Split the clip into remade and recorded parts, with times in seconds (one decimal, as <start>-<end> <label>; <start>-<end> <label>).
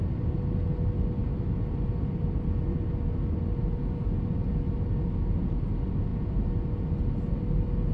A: 0.0-7.9 recorded